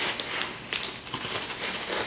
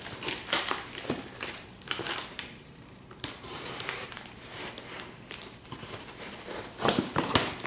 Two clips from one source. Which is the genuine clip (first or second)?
first